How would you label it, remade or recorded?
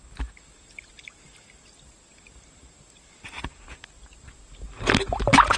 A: recorded